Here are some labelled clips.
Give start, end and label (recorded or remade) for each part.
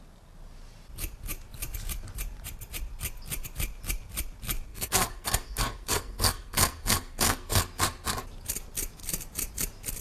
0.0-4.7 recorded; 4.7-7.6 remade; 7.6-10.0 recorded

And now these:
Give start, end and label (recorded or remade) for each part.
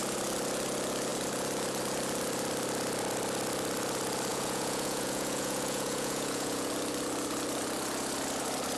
0.0-4.3 recorded; 4.3-6.7 remade; 6.7-8.8 recorded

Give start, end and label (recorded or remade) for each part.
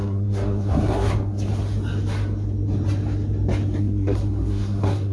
0.0-1.5 remade; 1.5-3.8 recorded; 3.8-5.1 remade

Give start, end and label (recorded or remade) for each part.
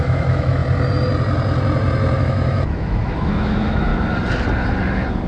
0.0-0.6 remade; 0.6-2.2 recorded; 2.2-3.9 remade; 3.9-5.3 recorded